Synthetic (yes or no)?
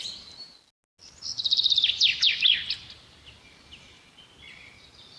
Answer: no